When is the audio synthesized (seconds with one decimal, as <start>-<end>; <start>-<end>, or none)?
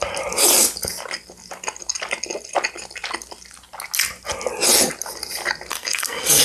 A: 5.7-6.4